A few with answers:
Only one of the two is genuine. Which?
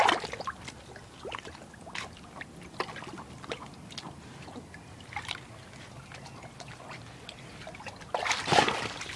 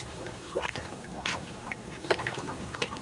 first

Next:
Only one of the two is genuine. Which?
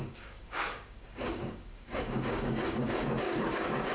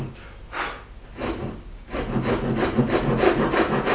second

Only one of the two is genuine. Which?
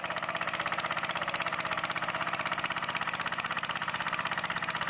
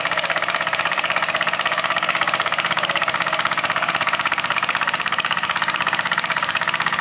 first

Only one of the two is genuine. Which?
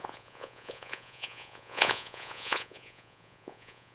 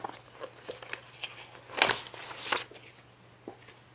second